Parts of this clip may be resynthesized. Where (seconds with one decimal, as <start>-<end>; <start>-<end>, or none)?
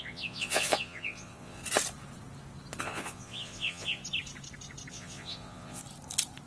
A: 0.0-1.6; 2.8-4.0; 4.9-5.8